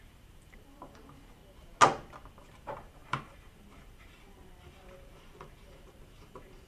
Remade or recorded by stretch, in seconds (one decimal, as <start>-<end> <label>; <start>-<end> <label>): 0.0-1.4 remade; 1.4-2.4 recorded; 2.4-6.7 remade